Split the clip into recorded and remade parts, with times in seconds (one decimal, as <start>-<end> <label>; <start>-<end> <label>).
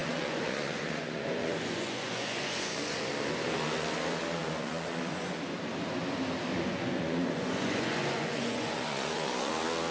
0.0-3.1 remade; 3.1-4.4 recorded; 4.4-5.4 remade; 5.4-6.5 recorded; 6.5-9.5 remade; 9.5-9.9 recorded